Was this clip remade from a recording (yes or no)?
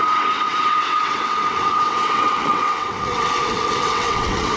yes